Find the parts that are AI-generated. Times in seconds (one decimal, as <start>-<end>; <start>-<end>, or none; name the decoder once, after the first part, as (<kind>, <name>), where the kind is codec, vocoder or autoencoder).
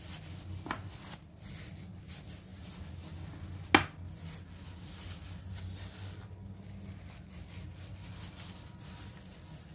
none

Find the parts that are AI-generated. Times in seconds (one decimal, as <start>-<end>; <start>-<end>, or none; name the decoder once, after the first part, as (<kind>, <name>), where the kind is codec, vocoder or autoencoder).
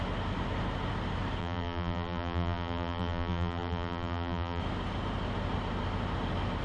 1.4-4.6 (vocoder, BigVGAN v2)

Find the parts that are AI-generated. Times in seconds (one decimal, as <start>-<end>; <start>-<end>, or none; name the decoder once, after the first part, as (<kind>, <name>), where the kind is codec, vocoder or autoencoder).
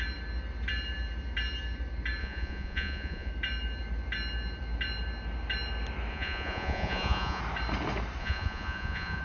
2.2-3.3 (vocoder, Vocos); 6.1-7.4; 8.2-9.2